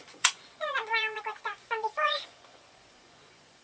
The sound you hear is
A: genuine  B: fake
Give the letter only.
B